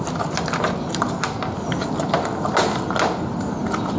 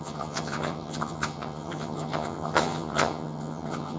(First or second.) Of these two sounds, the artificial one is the second